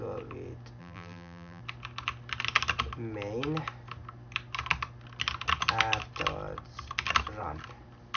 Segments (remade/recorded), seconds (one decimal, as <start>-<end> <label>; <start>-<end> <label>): 0.0-0.8 recorded; 0.8-1.6 remade; 1.6-8.2 recorded